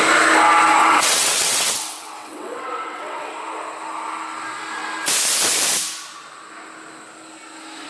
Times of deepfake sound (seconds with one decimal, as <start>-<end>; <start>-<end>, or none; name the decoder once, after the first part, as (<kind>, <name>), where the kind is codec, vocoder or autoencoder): 0.8-3.3 (vocoder, WaveNeXt)